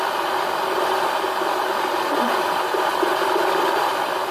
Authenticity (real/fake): real